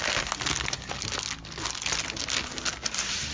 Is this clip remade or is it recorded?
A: recorded